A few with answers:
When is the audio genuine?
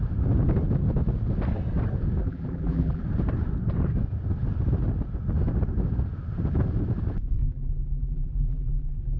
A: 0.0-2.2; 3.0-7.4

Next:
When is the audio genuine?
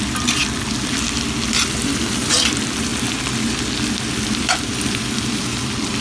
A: 0.4-1.6; 2.9-4.1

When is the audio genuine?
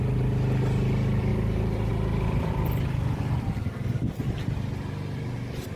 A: 0.0-5.8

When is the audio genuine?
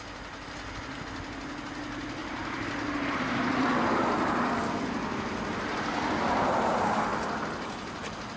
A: 0.0-2.2; 4.5-8.4